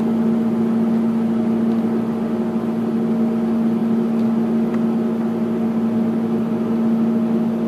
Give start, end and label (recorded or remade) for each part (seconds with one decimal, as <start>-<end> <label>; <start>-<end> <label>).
0.0-7.7 recorded